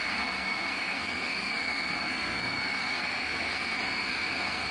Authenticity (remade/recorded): remade